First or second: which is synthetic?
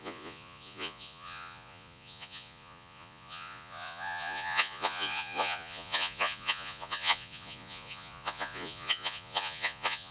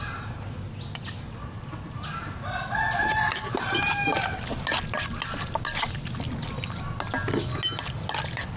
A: first